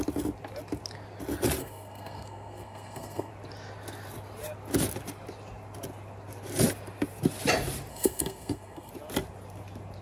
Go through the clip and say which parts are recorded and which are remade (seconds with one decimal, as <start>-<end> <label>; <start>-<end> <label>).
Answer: 0.0-1.6 recorded; 1.6-3.3 remade; 3.3-7.9 recorded; 7.9-8.9 remade; 8.9-10.0 recorded